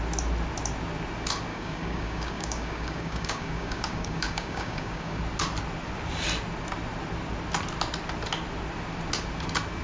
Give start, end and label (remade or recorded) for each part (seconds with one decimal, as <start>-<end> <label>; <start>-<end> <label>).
0.0-1.5 recorded; 1.5-5.2 remade; 5.2-9.8 recorded